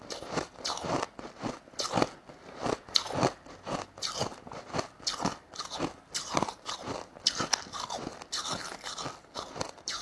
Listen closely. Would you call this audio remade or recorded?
recorded